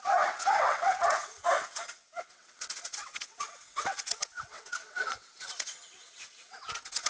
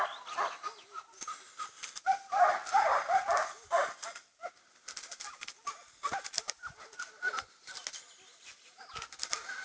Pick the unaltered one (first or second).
second